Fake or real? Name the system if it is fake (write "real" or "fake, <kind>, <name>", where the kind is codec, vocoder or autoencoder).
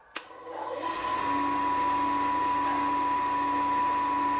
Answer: real